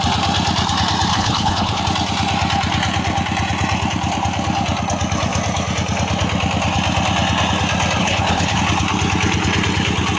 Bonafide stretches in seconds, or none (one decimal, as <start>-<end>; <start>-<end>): 0.0-1.1; 1.8-8.0; 8.6-10.2